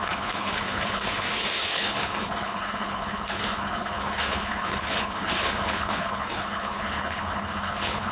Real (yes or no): no